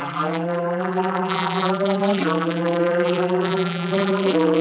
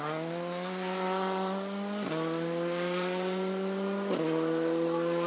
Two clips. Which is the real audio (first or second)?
second